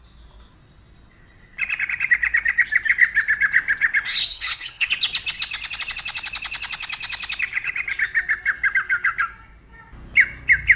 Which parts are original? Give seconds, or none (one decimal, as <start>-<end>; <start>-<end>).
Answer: 0.0-4.3; 4.9-10.8